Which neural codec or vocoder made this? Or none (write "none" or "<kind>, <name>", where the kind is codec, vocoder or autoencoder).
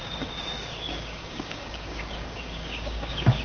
codec, DAC